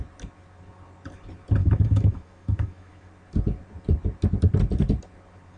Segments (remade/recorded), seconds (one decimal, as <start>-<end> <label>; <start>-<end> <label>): 0.0-1.6 recorded; 1.6-3.1 remade; 3.1-5.6 recorded